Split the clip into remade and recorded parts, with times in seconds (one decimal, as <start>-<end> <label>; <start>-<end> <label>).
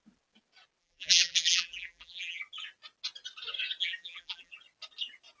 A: 0.0-0.8 recorded; 0.8-2.4 remade; 2.4-3.8 recorded; 3.8-4.5 remade; 4.5-5.4 recorded